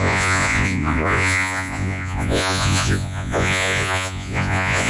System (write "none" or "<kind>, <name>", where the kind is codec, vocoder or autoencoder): vocoder, Vocos